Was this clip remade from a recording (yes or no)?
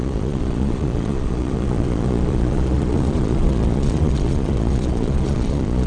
yes